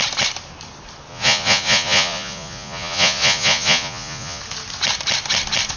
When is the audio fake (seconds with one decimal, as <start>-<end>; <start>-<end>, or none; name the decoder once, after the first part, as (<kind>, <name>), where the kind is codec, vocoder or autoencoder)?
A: 1.1-4.4 (vocoder, Vocos)